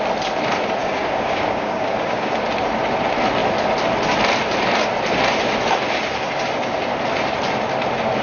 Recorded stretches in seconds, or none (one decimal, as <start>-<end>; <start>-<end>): 0.0-0.8; 2.3-8.2